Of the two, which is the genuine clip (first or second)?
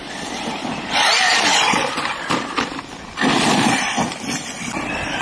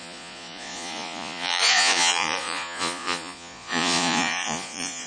first